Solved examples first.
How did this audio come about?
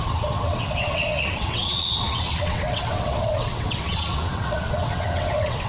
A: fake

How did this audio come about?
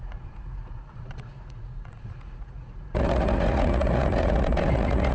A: fake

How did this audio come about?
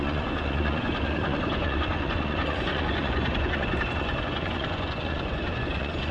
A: fake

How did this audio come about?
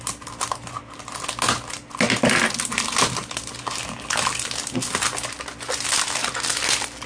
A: real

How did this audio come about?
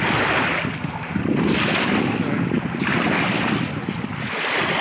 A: real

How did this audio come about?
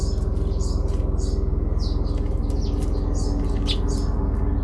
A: real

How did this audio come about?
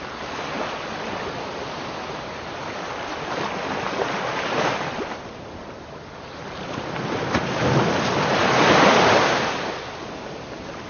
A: real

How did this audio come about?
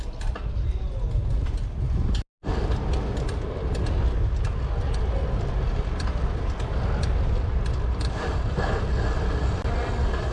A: real